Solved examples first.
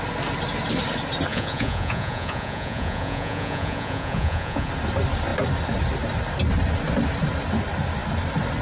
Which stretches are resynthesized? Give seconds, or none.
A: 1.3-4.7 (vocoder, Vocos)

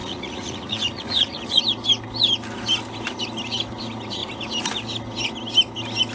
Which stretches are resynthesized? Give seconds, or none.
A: 0.0-1.6 (vocoder, Vocos)

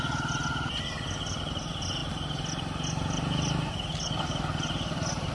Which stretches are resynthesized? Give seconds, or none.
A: none

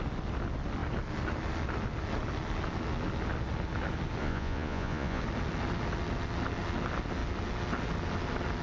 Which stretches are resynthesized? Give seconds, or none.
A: 4.2-5.2 (vocoder, Vocos)

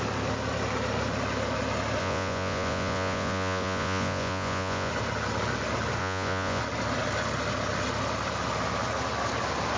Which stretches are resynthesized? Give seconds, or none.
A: 2.0-4.9 (vocoder, Vocos); 6.0-6.6

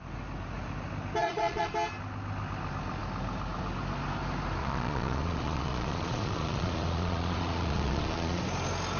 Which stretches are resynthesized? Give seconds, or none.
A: 1.2-1.7 (vocoder, Vocos); 4.6-8.4

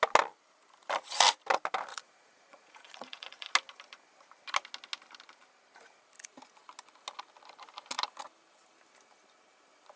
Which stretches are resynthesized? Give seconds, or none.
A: 1.9-3.5 (vocoder, Vocos)